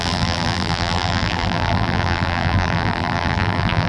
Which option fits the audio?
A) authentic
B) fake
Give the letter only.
B